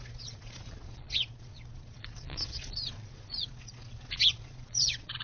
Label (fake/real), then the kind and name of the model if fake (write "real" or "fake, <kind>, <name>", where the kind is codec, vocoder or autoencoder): fake, vocoder, Vocos